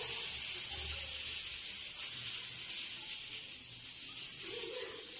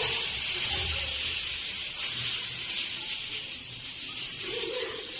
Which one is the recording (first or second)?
first